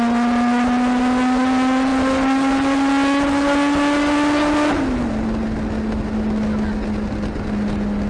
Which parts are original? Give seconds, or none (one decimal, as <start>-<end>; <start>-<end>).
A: 0.0-8.1